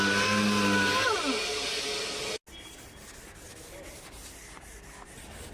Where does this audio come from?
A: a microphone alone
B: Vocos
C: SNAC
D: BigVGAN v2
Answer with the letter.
A